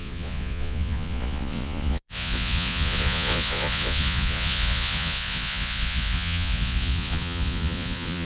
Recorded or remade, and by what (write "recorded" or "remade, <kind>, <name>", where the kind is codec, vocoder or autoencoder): remade, vocoder, Vocos